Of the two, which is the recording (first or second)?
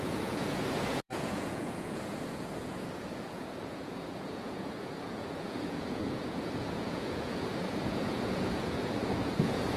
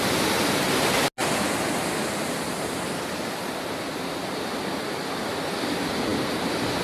second